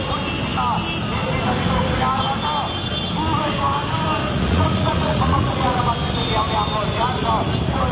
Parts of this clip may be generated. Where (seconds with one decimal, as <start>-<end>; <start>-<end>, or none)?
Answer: 4.2-5.8